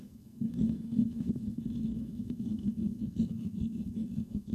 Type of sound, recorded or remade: remade